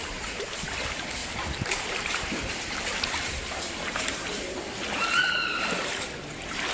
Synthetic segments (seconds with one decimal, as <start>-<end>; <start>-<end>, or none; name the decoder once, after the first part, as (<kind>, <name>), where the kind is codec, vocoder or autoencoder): 0.0-0.7 (vocoder, BigVGAN v2); 1.2-5.2